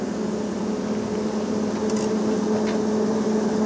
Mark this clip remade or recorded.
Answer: recorded